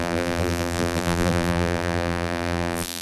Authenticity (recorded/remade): remade